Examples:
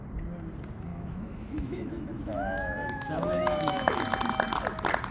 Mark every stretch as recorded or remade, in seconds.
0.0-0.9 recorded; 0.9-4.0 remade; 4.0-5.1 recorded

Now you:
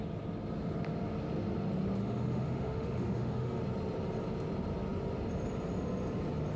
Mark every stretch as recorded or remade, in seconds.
0.0-2.0 recorded; 2.0-3.6 remade; 3.6-6.6 recorded

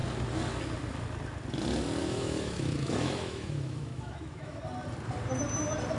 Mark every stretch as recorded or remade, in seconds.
0.0-2.0 recorded; 2.0-4.6 remade; 4.6-6.0 recorded

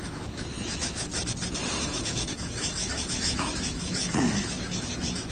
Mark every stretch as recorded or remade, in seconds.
0.0-1.1 remade; 1.1-1.8 recorded; 1.8-5.3 remade

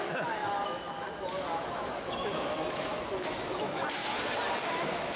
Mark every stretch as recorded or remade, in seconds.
0.0-4.0 remade; 4.0-4.7 recorded; 4.7-5.2 remade

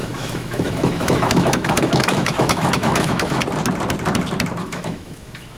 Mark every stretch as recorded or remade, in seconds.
0.0-3.4 remade; 3.4-4.6 recorded; 4.6-5.6 remade